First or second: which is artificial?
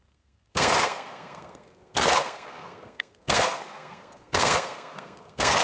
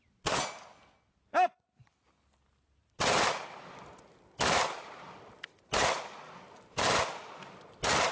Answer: first